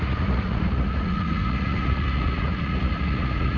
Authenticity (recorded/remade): remade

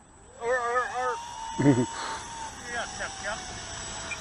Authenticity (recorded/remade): recorded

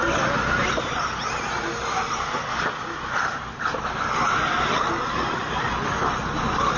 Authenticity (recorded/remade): recorded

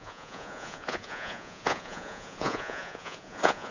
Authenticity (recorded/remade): remade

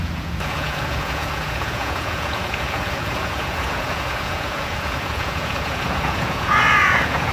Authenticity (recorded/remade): remade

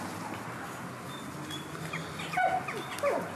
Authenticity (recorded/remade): recorded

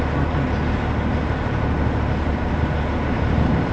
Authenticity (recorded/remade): recorded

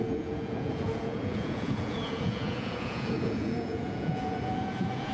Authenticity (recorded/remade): remade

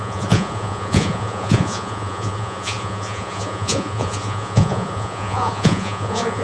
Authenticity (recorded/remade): remade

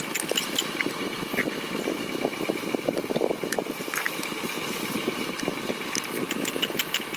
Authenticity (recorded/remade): recorded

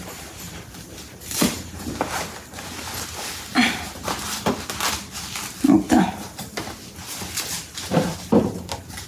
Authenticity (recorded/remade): recorded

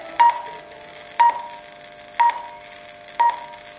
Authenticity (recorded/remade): recorded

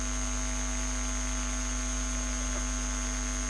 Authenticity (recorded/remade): recorded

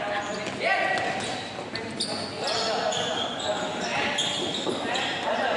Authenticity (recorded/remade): recorded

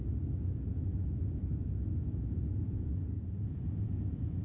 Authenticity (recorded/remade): remade